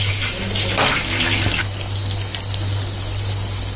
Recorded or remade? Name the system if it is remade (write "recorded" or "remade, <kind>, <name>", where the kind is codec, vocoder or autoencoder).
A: recorded